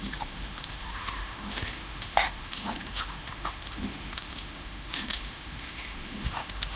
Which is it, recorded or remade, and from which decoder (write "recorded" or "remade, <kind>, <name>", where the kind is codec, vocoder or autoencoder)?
remade, autoencoder, DAC-VAE